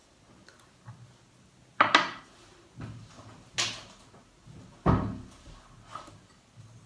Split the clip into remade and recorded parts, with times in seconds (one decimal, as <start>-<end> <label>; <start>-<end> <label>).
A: 0.0-6.9 recorded